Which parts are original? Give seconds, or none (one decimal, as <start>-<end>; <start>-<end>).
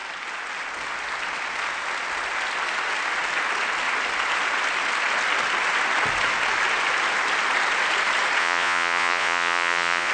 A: 0.0-8.4